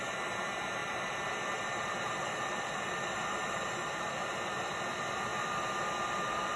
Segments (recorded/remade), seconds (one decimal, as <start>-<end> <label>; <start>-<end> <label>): 0.0-0.8 recorded; 0.8-4.8 remade; 4.8-5.3 recorded; 5.3-6.6 remade

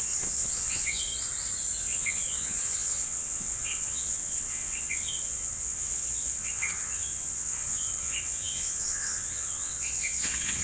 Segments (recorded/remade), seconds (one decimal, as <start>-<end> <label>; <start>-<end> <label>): 0.0-1.1 remade; 1.1-1.8 recorded; 1.8-10.6 remade

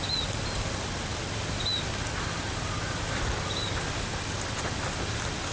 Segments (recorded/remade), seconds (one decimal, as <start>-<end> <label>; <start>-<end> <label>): 0.0-5.5 recorded

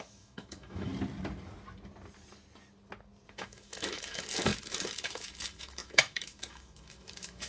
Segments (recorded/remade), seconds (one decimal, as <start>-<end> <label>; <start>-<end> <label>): 0.0-0.9 remade; 0.9-3.3 recorded; 3.3-7.5 remade

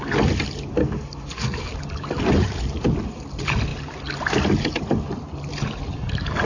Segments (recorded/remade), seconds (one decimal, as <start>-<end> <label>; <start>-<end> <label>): 0.0-0.8 recorded; 0.8-1.7 remade; 1.7-6.4 recorded